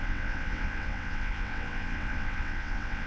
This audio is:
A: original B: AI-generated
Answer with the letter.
B